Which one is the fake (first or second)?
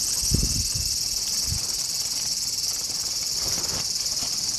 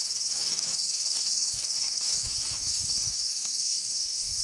second